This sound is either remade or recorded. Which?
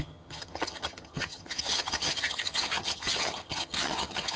remade